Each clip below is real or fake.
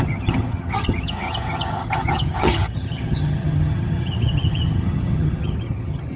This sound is fake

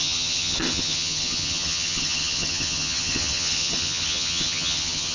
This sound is fake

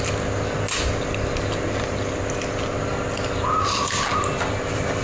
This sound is real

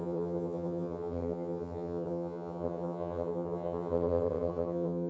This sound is fake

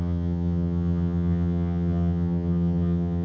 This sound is fake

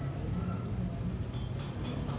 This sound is real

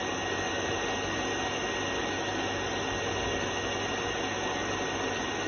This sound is real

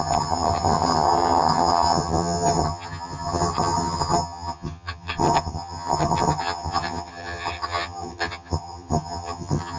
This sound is fake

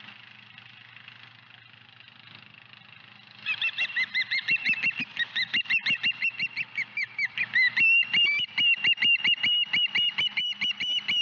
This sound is real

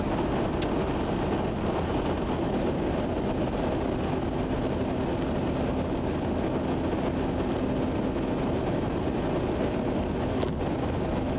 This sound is real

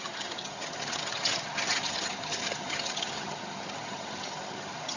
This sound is fake